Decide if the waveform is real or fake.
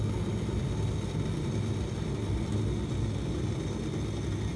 real